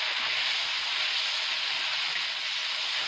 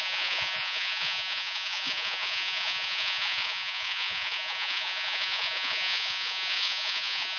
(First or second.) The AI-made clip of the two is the second